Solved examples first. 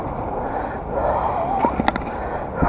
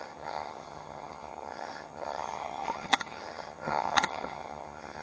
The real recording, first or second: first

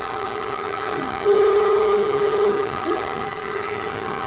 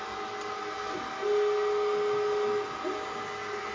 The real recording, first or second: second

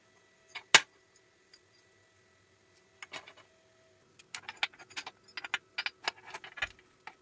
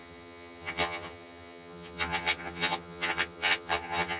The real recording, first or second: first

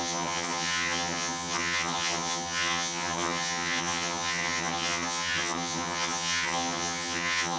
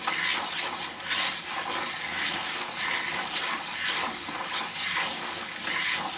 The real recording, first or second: second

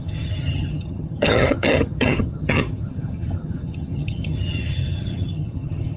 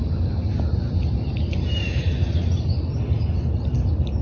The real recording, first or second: second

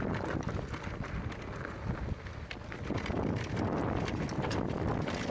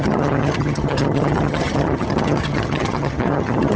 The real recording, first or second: first